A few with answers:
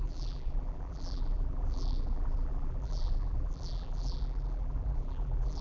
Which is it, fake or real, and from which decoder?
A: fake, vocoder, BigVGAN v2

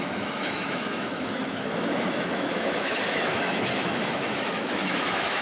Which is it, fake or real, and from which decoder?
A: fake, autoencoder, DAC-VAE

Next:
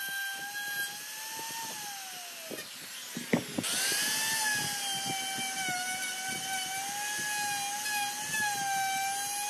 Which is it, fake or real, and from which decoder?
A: real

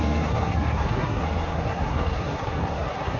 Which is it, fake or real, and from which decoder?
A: fake, codec, SNAC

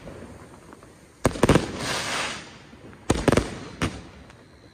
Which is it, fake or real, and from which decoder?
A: real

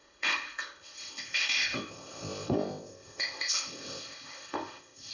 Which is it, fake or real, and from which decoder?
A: fake, codec, ZipCodec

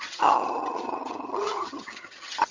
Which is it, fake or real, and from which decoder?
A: fake, vocoder, HiFi-GAN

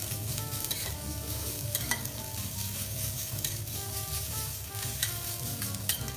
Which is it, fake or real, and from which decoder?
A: fake, codec, DAC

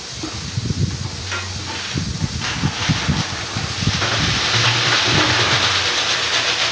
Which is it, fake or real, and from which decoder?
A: real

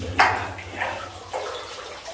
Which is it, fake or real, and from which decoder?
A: real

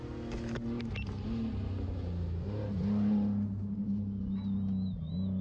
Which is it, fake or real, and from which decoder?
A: real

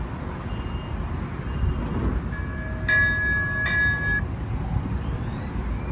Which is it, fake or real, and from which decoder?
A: real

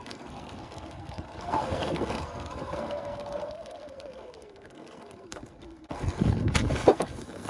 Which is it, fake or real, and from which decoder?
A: fake, codec, SNAC